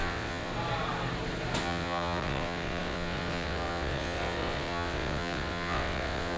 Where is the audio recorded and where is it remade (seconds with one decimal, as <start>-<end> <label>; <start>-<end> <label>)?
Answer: 0.0-0.5 remade; 0.5-1.6 recorded; 1.6-6.4 remade